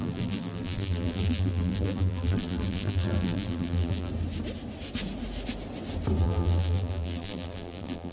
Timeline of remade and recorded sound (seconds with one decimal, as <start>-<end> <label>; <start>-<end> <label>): 0.0-4.1 remade; 4.1-6.2 recorded; 6.2-8.1 remade